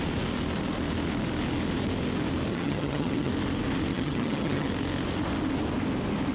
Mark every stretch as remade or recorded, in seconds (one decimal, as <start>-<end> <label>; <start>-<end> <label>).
0.0-2.5 recorded; 2.5-3.3 remade; 3.3-3.9 recorded; 3.9-4.7 remade; 4.7-6.3 recorded